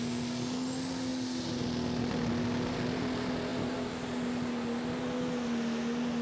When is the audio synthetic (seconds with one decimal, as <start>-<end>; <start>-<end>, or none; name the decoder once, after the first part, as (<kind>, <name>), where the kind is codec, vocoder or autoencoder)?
none